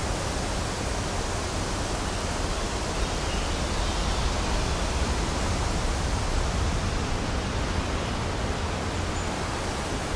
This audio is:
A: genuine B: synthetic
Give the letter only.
A